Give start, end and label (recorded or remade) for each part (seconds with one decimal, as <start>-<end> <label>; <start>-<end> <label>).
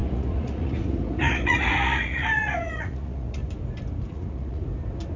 0.0-3.4 remade; 3.4-4.1 recorded; 4.1-4.6 remade; 4.6-5.2 recorded